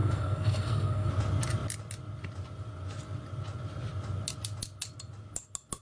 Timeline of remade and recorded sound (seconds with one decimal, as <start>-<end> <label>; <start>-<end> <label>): 0.0-1.1 remade; 1.1-5.8 recorded